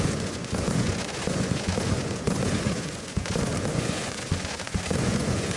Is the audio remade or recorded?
remade